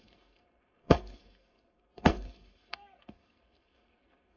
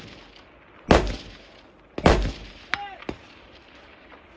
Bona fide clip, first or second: second